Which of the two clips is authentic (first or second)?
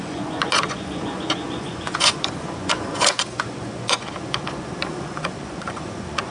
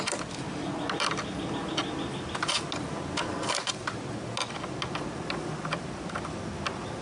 second